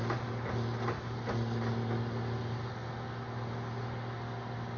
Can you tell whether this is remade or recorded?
recorded